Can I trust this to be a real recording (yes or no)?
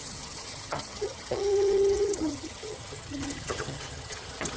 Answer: no